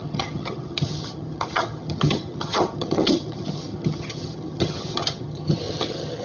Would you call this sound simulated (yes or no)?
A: yes